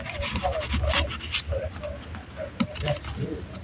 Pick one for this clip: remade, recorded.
recorded